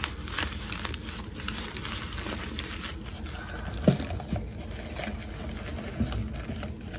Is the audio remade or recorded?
recorded